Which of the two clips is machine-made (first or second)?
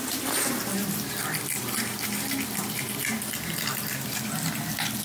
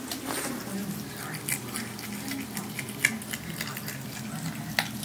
first